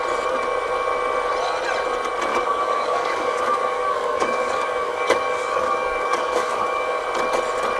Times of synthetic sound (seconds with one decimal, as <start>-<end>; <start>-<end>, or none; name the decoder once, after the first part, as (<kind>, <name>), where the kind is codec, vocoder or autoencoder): 2.3-7.0 (codec, DAC)